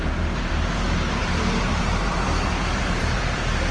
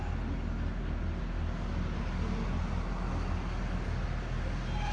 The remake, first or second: first